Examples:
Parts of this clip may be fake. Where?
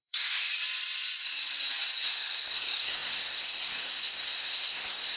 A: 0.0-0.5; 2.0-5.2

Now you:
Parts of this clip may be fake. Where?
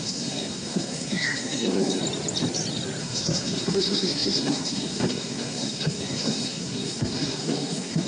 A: 0.0-2.0; 3.0-8.1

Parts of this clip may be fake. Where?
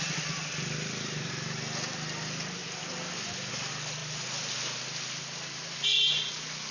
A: none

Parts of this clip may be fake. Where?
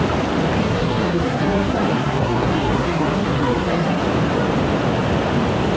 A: 0.6-4.0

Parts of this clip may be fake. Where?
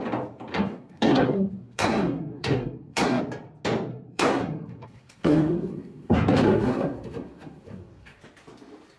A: 0.5-3.2; 3.9-8.2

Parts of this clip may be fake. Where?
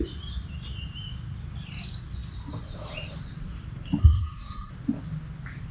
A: 4.0-4.7